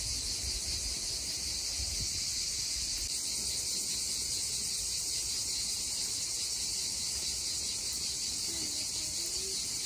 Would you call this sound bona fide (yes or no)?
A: yes